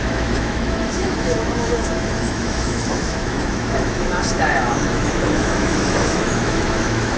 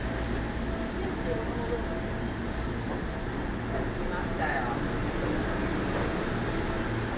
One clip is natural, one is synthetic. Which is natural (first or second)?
second